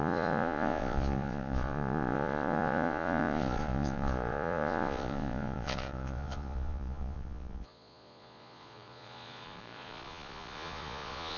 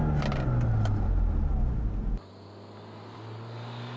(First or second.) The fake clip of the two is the first